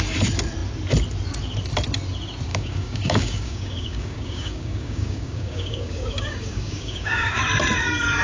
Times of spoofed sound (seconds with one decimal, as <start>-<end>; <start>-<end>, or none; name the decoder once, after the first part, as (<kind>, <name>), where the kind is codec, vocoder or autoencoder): 2.5-7.4 (codec, DAC)

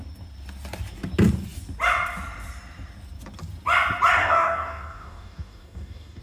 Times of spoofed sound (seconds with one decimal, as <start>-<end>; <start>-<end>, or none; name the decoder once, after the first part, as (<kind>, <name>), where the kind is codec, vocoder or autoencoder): 4.2-6.2 (codec, DAC)

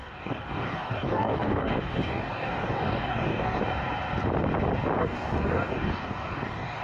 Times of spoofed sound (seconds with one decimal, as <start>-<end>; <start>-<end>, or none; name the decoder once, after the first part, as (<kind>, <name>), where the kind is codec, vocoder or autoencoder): 0.0-3.6 (codec, DAC); 5.0-6.8

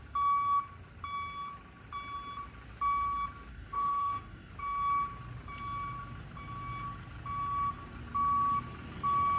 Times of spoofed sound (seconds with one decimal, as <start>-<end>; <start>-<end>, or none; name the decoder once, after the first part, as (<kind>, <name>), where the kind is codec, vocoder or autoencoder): 3.5-4.5 (codec, DAC)

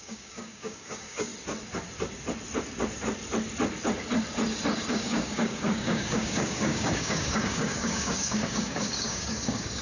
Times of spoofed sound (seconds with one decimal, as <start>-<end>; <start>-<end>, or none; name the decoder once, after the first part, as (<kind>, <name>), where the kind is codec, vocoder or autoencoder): 0.0-1.3 (codec, DAC); 4.9-9.8

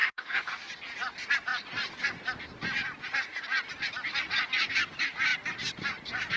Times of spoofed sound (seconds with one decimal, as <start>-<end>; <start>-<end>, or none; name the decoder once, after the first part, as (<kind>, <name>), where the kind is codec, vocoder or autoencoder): 0.0-0.7 (codec, DAC)

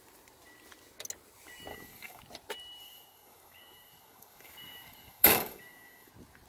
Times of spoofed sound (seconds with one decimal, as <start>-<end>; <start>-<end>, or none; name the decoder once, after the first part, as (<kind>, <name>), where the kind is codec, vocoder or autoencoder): 1.7-2.2 (codec, DAC); 2.8-6.1

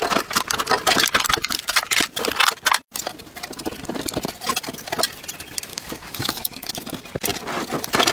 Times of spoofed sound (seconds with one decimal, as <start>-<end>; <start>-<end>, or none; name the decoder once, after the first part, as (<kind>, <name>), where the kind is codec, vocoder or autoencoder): 5.7-6.7 (codec, DAC)